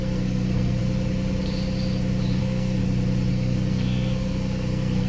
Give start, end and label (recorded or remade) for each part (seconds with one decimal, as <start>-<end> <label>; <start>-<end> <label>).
0.0-0.8 remade; 0.8-2.4 recorded; 2.4-2.8 remade; 2.8-3.3 recorded; 3.3-5.1 remade